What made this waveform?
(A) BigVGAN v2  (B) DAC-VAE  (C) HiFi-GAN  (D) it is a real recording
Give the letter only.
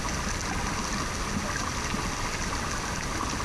D